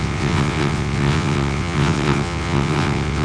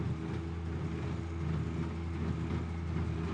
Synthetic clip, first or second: first